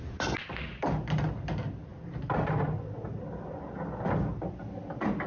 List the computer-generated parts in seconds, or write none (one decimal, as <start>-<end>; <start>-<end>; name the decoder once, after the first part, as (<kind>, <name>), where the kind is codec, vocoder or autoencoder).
none